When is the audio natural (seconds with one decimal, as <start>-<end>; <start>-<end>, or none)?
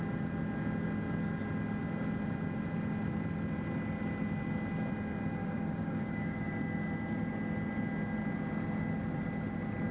0.0-5.4; 6.5-9.9